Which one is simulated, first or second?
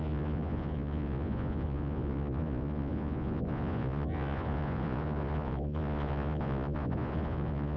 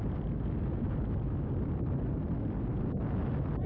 first